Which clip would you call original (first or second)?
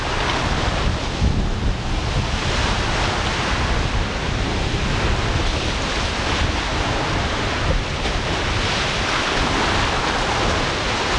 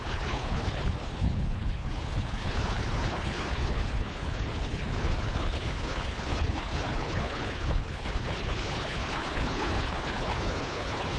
first